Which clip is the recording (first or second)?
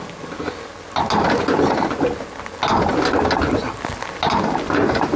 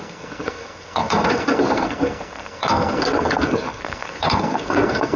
first